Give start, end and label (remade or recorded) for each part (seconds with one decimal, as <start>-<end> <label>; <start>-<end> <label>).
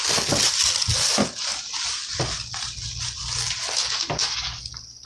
0.0-5.1 recorded